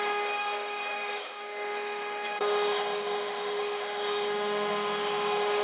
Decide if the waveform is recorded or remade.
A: remade